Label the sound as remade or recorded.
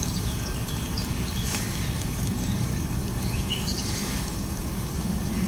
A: remade